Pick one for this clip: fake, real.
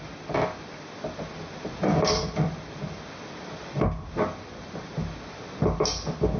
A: real